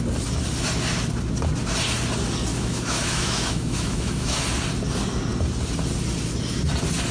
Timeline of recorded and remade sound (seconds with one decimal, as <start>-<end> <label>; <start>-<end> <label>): 0.0-2.5 recorded; 2.5-4.4 remade; 4.4-7.1 recorded